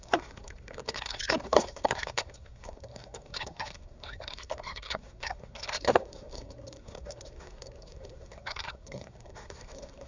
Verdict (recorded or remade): remade